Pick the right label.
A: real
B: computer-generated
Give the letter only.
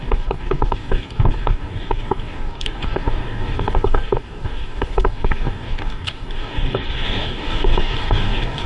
B